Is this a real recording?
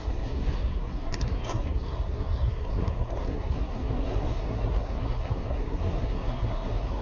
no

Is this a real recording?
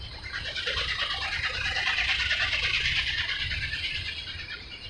no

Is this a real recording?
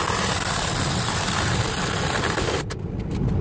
yes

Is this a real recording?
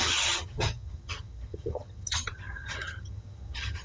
no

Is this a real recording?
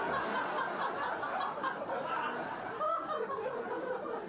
yes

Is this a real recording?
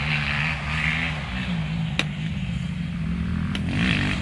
yes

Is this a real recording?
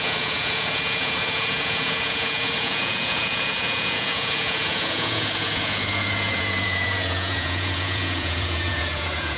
no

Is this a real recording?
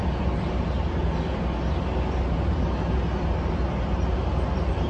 yes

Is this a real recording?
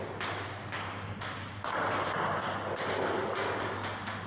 yes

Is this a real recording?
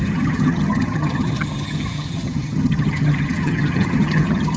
no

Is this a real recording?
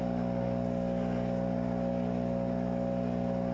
yes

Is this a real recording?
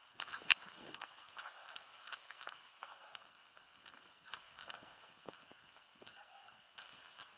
no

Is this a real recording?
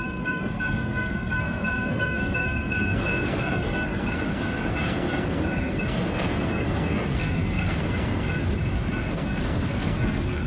no